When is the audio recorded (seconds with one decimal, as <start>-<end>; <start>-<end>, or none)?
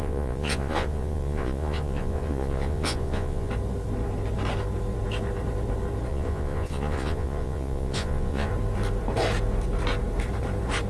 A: 3.5-6.1; 8.5-10.9